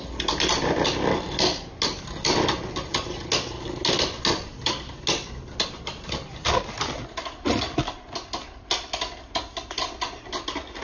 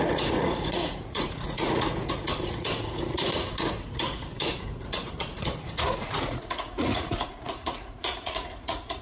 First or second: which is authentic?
first